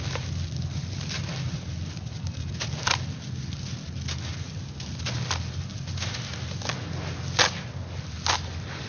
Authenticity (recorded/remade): recorded